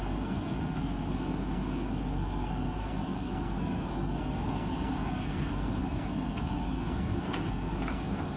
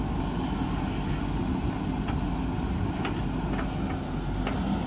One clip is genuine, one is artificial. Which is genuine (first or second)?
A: second